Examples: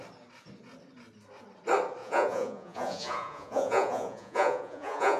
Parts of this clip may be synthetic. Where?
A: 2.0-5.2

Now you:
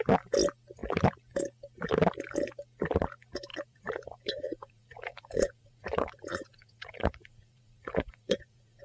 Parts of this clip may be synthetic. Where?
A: 3.5-8.8

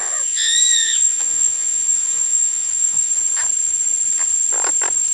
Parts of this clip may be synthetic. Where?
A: 0.0-3.1

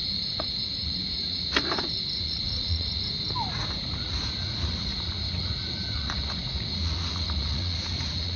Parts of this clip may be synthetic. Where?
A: 0.0-3.1; 3.8-8.4